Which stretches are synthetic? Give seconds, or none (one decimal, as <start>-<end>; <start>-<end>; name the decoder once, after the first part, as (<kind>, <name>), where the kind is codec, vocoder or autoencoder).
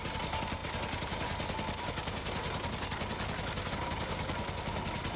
none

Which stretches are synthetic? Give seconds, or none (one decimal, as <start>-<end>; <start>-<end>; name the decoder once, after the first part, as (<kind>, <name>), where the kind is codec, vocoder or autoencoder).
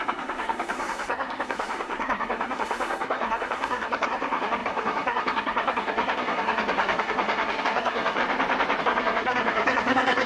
0.0-8.2 (codec, SNAC); 8.8-10.3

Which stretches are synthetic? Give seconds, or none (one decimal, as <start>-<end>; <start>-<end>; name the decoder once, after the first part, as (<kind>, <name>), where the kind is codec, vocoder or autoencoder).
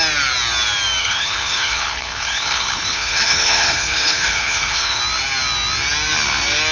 1.0-5.0 (codec, HILCodec)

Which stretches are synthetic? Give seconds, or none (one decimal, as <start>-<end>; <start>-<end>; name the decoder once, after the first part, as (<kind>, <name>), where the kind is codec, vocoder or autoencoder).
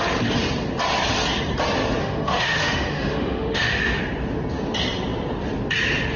2.0-4.0 (autoencoder, DAC-VAE)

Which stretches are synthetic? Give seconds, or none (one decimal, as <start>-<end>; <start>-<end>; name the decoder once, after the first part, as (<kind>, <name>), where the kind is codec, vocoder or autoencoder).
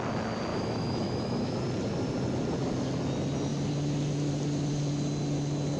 0.5-1.6 (autoencoder, DAC-VAE)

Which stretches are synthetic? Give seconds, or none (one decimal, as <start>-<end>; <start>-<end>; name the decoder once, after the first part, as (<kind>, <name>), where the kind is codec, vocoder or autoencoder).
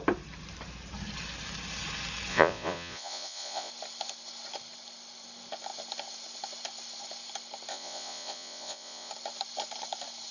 2.3-3.7 (vocoder, Vocos); 7.7-9.1